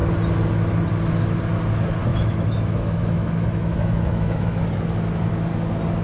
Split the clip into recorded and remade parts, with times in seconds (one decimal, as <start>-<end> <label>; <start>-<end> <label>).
0.0-2.1 recorded; 2.1-4.6 remade; 4.6-6.0 recorded